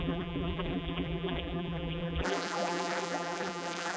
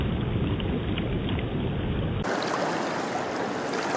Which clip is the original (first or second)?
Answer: second